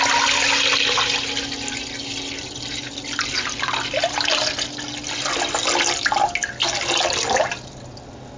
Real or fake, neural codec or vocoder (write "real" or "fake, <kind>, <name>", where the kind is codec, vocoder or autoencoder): real